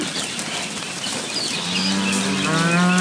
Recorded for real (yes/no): yes